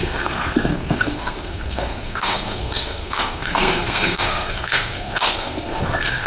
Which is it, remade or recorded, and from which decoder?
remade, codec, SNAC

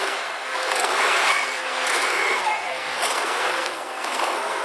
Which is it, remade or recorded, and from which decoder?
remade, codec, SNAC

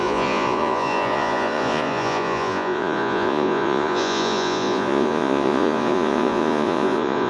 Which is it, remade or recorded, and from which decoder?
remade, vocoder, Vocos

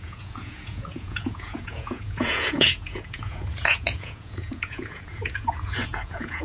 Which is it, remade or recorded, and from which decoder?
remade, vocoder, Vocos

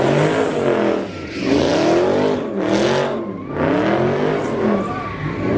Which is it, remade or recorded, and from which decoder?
recorded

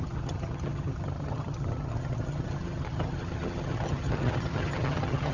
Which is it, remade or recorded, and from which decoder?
remade, vocoder, HiFi-GAN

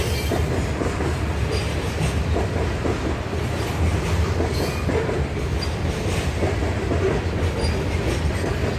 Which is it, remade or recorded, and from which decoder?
recorded